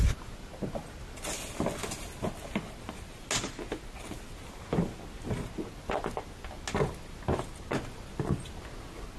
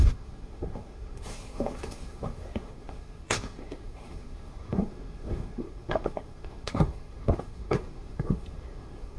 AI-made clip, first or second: second